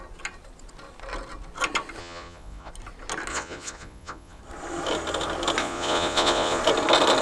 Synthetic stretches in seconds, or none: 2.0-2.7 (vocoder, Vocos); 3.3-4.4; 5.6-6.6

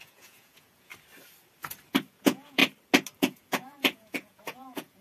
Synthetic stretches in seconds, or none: 0.0-0.9 (vocoder, Vocos); 2.1-2.6; 3.2-5.0

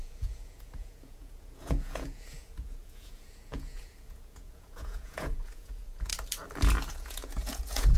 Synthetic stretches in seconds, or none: 0.0-6.1 (vocoder, Vocos); 6.9-8.0

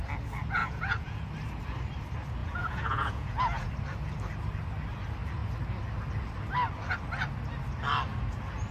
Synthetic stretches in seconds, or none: 0.6-1.3 (vocoder, Vocos); 2.4-3.7

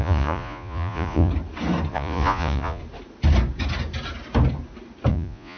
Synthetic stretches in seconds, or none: 0.0-1.3 (vocoder, Vocos); 1.9-2.8; 5.1-5.6

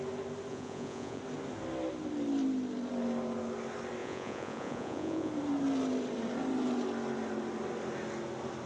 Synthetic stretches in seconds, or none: 0.5-1.2 (vocoder, Vocos); 4.0-5.3

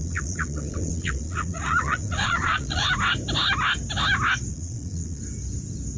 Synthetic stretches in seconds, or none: 0.0-2.9 (vocoder, Vocos); 4.5-5.2

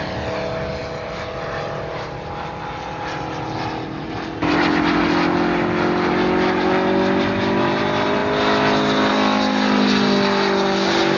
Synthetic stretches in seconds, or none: none